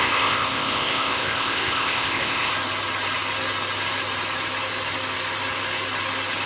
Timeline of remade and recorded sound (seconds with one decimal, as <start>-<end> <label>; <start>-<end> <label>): 0.0-2.5 remade; 2.5-6.5 recorded